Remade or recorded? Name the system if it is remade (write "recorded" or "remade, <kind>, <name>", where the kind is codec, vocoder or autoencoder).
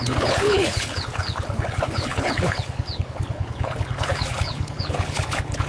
remade, codec, HILCodec